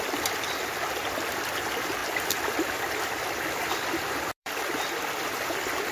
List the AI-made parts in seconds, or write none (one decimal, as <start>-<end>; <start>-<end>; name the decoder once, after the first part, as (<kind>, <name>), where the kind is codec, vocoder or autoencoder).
2.0-5.5 (vocoder, BigVGAN v2)